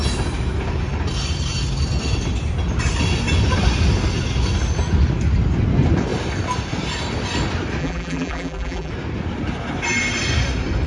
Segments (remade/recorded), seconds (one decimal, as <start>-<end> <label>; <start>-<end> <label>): 0.0-7.8 recorded; 7.8-8.9 remade; 8.9-10.9 recorded